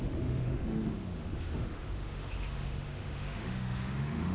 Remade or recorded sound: remade